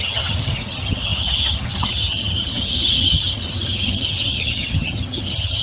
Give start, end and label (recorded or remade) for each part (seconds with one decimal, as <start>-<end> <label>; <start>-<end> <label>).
0.0-5.6 remade